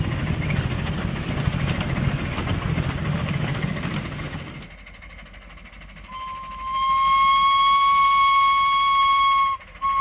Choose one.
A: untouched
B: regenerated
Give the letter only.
A